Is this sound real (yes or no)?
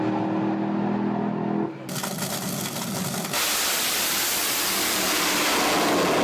yes